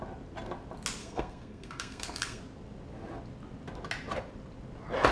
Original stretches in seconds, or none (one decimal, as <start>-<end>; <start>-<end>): 0.0-1.0; 2.4-5.1